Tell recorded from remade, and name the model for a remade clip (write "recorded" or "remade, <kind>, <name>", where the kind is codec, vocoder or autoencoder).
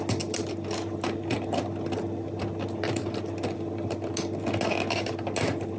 recorded